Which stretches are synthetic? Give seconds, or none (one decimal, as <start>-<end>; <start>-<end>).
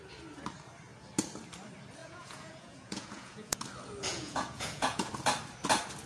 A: 2.0-3.6; 4.1-5.1